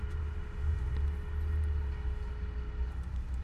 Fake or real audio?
real